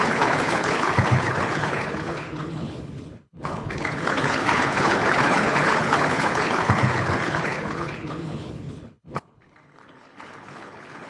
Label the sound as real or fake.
fake